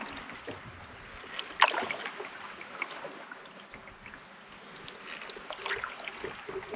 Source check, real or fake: real